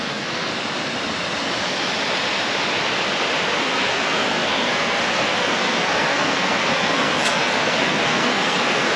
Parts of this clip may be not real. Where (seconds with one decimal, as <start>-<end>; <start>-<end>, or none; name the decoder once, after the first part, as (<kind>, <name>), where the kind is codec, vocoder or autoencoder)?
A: 0.0-0.5 (codec, SNAC); 3.6-9.0